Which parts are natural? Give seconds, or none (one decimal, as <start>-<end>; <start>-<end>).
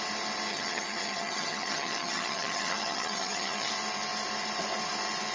0.0-0.5; 3.7-5.3